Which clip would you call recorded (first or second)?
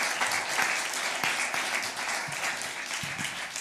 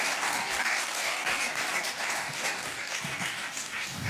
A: first